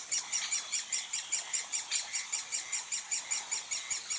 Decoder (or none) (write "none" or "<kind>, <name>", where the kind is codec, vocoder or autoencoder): none